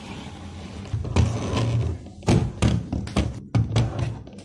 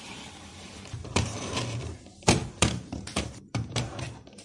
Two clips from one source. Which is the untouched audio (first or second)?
first